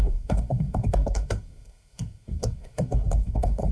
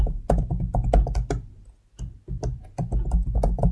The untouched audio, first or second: second